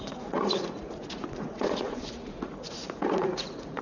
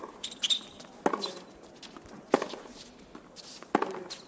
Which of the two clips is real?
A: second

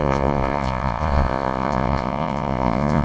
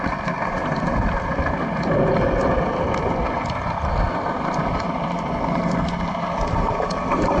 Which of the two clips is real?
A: second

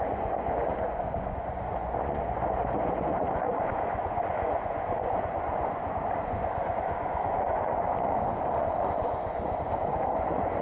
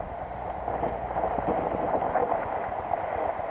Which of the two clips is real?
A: second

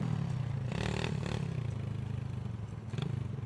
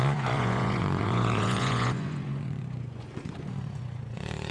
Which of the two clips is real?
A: first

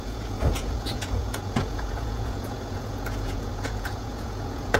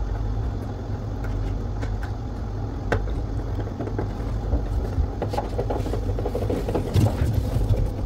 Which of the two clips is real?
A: second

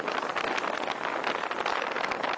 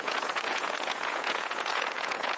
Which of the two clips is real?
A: first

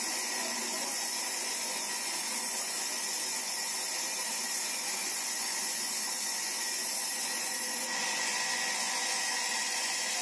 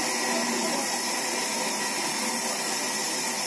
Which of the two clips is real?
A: second